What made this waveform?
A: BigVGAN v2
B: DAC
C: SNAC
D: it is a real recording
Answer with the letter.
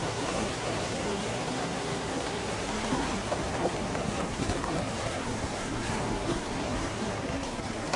C